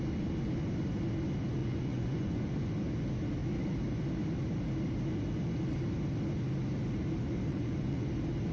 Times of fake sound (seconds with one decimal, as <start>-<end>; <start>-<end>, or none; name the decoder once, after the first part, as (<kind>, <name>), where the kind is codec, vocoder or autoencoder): 1.6-2.5 (vocoder, Vocos); 7.5-8.1